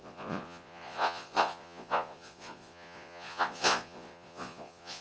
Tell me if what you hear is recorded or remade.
remade